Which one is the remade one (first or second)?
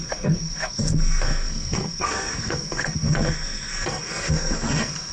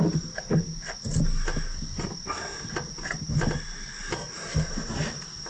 first